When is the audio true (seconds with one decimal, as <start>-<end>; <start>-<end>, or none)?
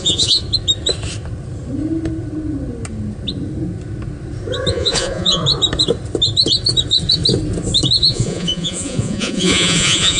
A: 0.4-4.7; 5.4-8.0